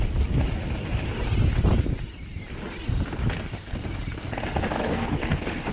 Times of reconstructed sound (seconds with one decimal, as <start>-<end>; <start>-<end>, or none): 4.9-5.7